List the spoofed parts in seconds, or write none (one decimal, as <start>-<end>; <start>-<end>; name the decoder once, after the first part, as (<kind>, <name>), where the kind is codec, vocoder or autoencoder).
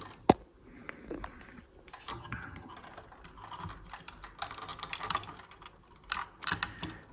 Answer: 2.1-2.7 (vocoder, HiFi-GAN)